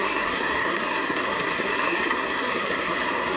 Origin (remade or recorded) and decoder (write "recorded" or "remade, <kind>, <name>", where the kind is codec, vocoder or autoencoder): remade, codec, SNAC